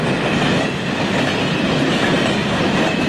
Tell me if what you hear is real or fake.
real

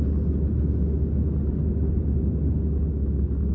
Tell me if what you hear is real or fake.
real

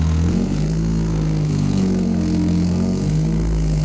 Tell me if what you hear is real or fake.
fake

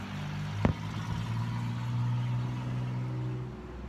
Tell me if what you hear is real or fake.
real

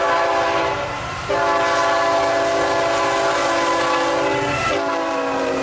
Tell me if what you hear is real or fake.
real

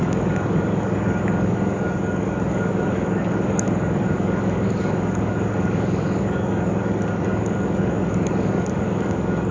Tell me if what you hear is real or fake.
fake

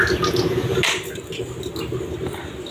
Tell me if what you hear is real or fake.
real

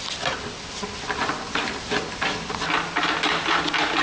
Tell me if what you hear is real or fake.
real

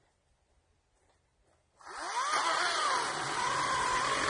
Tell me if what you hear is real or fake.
real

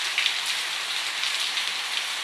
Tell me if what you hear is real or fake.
real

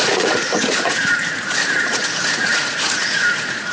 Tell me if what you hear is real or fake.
fake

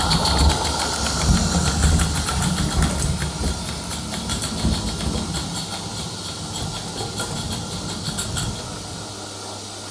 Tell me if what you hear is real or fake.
real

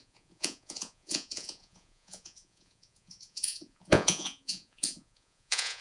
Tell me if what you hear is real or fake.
fake